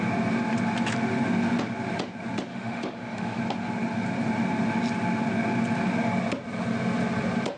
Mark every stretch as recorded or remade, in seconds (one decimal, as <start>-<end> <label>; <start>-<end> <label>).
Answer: 0.0-2.5 recorded; 2.5-3.4 remade; 3.4-7.6 recorded